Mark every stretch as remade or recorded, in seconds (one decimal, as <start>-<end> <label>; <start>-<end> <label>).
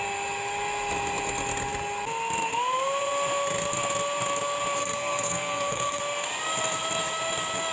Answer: 0.0-4.8 recorded; 4.8-6.0 remade; 6.0-7.7 recorded